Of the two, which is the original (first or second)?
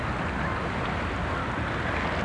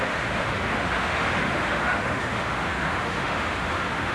first